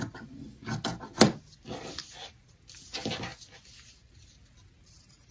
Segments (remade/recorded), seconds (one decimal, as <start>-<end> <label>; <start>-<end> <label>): 0.0-5.3 recorded